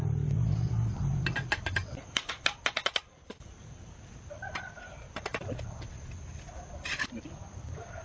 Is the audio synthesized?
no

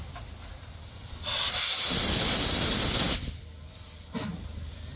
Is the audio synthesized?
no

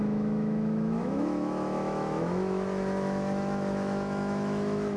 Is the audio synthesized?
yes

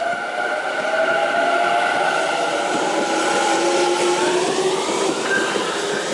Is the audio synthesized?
no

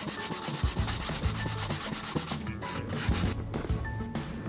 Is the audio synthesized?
no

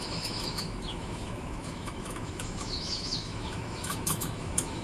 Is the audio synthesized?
yes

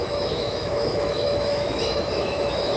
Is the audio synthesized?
yes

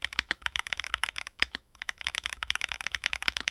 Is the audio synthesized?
yes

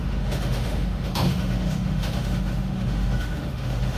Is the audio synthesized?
yes